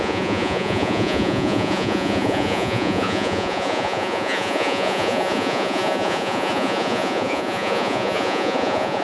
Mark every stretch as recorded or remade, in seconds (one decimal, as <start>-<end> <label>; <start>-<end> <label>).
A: 0.0-9.0 remade